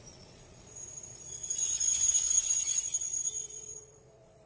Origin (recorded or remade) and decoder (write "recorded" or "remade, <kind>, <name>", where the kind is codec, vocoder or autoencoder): remade, vocoder, Vocos